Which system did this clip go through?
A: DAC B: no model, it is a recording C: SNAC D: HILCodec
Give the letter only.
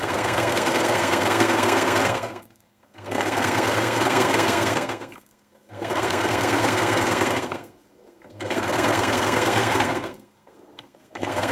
C